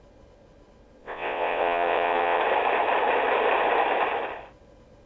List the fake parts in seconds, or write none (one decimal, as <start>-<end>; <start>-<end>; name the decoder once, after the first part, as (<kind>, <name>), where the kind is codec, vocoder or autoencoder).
1.0-2.4 (vocoder, WaveNeXt)